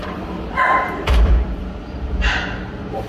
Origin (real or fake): fake